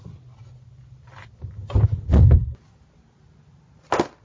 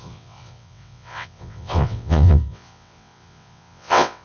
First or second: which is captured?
first